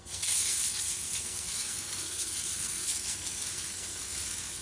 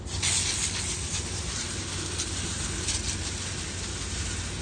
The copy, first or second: first